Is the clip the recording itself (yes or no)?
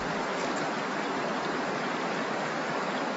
yes